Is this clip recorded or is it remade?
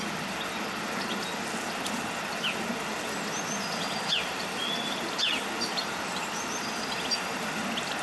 recorded